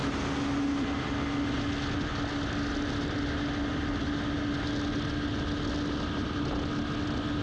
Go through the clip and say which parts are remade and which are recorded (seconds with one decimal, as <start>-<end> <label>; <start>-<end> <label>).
0.0-7.4 recorded